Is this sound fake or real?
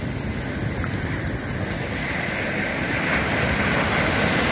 real